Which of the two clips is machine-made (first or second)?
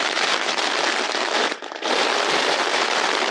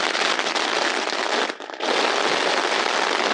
first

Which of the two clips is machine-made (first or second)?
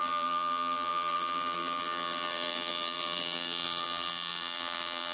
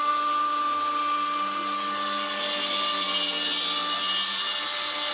first